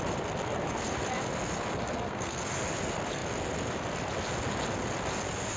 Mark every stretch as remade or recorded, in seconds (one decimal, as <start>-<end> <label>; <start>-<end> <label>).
0.0-1.8 recorded; 1.8-2.4 remade; 2.4-5.6 recorded